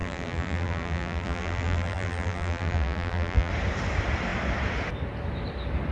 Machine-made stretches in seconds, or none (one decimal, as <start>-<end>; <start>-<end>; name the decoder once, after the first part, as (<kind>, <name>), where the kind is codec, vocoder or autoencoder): 0.0-3.5 (vocoder, BigVGAN v2)